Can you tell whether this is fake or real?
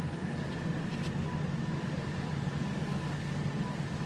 real